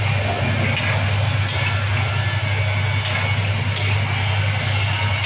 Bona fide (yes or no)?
yes